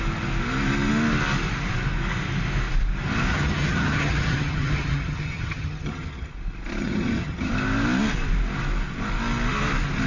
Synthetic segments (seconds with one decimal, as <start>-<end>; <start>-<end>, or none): 3.3-6.3; 6.8-7.5